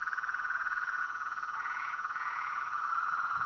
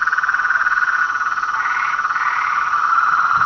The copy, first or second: first